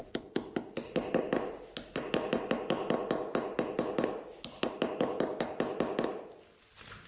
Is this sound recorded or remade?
recorded